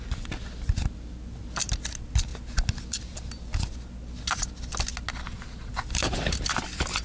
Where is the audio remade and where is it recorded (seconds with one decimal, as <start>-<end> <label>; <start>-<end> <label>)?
0.0-7.0 recorded